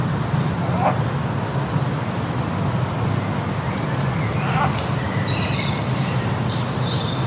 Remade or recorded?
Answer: recorded